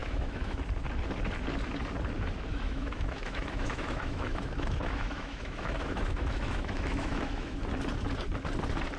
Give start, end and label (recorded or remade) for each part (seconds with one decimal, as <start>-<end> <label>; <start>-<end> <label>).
0.0-0.6 remade; 0.6-2.5 recorded; 2.5-7.6 remade; 7.6-9.0 recorded